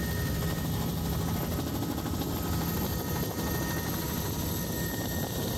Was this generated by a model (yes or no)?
no